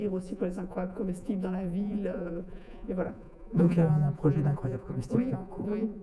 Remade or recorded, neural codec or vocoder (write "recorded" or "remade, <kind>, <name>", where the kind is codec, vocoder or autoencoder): remade, vocoder, Vocos